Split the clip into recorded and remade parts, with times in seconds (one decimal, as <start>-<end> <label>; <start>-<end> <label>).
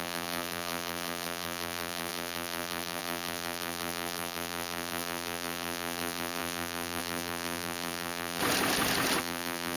0.0-8.4 remade; 8.4-9.2 recorded; 9.2-9.8 remade